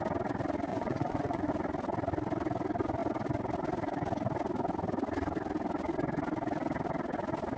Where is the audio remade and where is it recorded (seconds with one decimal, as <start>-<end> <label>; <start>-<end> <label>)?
0.0-0.7 recorded; 0.7-1.5 remade; 1.5-7.6 recorded